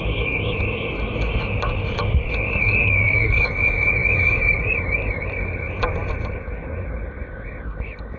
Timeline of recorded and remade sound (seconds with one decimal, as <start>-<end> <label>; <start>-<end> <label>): 0.0-2.8 recorded; 2.8-3.4 remade; 3.4-8.2 recorded